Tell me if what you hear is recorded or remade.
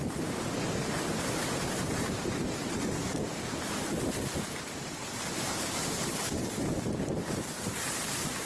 remade